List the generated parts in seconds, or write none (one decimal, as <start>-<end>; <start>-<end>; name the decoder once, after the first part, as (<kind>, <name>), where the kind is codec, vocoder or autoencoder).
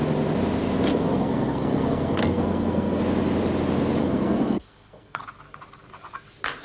0.9-3.0 (codec, SNAC); 4.0-5.2